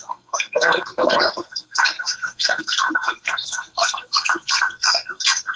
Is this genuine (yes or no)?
no